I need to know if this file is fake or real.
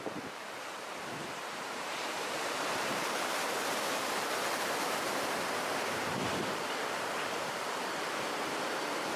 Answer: fake